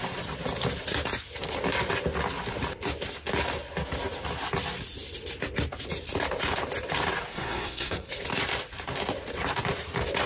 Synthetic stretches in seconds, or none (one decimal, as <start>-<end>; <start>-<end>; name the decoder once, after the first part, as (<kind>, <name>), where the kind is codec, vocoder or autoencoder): 7.3-8.1 (codec, SNAC)